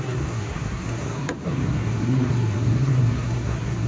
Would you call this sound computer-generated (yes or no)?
yes